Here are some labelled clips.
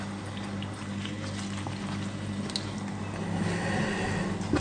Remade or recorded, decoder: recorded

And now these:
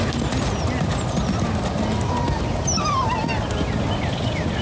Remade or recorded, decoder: recorded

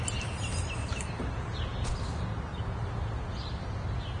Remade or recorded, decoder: recorded